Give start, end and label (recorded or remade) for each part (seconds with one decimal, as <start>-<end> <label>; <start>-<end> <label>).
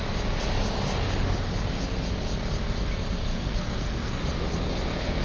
0.0-3.3 recorded; 3.3-4.2 remade; 4.2-5.2 recorded